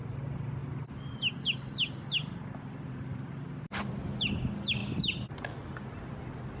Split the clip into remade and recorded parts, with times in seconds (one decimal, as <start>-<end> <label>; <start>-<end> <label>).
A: 0.0-6.6 recorded